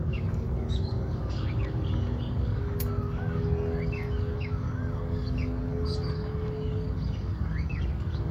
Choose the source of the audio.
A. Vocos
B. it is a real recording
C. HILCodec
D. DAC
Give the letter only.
D